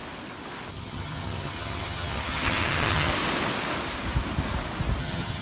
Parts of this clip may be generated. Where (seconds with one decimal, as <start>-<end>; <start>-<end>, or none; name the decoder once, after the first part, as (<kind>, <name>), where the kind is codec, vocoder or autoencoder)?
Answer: 0.7-3.1 (vocoder, HiFi-GAN); 5.0-5.4